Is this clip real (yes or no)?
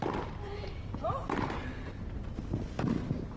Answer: yes